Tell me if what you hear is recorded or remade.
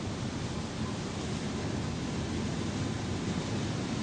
recorded